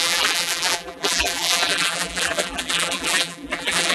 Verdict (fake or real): fake